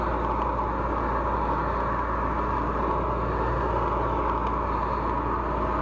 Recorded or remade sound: recorded